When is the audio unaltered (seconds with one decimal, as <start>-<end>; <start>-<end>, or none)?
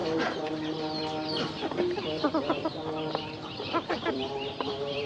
0.0-3.1